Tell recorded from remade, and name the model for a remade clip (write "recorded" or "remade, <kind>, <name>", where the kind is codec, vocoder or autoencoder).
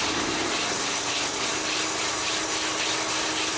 recorded